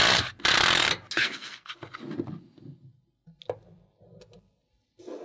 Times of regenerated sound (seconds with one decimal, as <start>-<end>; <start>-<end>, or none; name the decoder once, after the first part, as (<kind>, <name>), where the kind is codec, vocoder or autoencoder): 1.2-1.7 (codec, SNAC)